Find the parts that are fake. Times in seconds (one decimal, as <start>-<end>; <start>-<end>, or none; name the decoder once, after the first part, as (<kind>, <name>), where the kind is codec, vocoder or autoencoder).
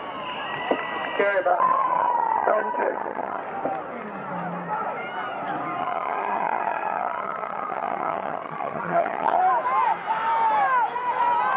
1.5-3.4 (vocoder, HiFi-GAN); 5.8-9.4